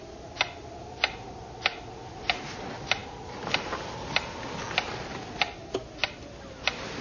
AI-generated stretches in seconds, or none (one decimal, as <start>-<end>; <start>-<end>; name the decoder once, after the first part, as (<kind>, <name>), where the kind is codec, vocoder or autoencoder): none

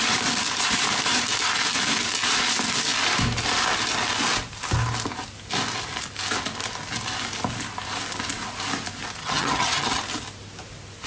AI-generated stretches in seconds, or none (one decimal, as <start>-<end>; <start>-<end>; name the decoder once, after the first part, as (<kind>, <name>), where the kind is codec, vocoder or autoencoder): 9.2-10.0 (vocoder, HiFi-GAN)